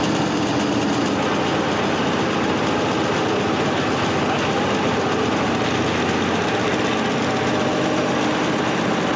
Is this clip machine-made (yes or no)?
no